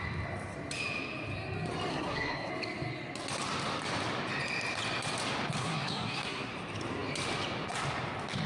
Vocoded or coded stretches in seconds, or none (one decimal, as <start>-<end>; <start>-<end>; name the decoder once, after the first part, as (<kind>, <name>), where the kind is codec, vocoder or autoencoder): 1.9-2.5 (codec, SNAC); 5.6-6.5